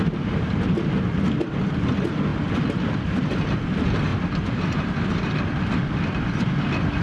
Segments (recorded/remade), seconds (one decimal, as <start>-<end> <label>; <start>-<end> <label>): 0.0-7.0 recorded